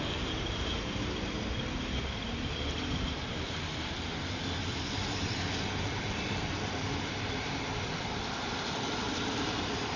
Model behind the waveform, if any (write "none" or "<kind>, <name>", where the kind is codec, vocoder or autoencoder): vocoder, BigVGAN v2